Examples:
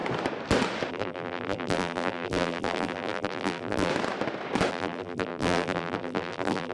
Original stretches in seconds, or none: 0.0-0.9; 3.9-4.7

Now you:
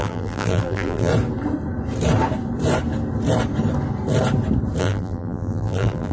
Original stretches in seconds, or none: 1.1-4.8

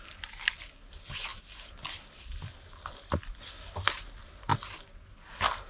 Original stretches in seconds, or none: 0.0-1.3; 2.7-5.7

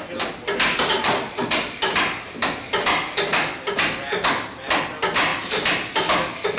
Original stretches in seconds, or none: 0.0-3.3; 4.8-5.3; 5.9-6.6